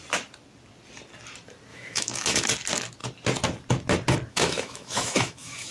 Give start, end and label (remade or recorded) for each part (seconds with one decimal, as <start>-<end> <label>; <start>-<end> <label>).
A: 0.0-1.7 recorded; 1.7-2.5 remade; 2.5-4.3 recorded; 4.3-5.7 remade

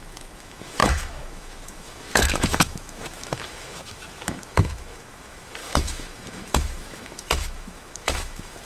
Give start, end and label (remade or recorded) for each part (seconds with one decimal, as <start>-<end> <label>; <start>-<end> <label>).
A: 0.0-8.7 remade

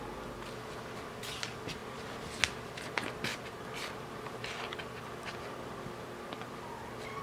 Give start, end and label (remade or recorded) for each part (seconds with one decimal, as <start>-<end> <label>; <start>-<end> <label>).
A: 0.0-7.2 recorded

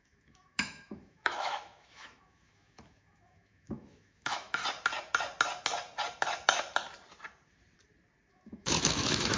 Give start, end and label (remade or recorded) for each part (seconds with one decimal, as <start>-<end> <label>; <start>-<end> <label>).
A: 0.0-4.6 remade; 4.6-8.3 recorded; 8.3-9.4 remade

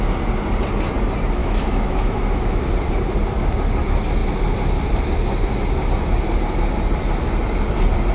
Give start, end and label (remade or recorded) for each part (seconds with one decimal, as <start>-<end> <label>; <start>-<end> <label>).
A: 0.0-1.4 recorded; 1.4-2.7 remade; 2.7-8.1 recorded

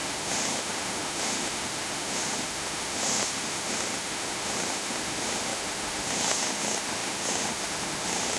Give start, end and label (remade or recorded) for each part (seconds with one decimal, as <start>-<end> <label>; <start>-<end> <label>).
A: 0.0-8.4 remade

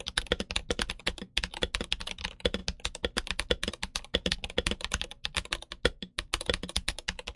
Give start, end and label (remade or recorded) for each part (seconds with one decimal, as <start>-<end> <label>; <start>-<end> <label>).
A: 0.0-7.4 recorded

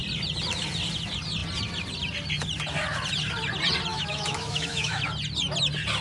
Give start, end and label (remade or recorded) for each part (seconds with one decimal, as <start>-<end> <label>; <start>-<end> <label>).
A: 0.0-3.9 recorded; 3.9-5.0 remade; 5.0-6.0 recorded